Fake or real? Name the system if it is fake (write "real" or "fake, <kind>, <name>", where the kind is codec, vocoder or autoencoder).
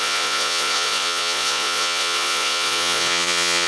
fake, vocoder, Vocos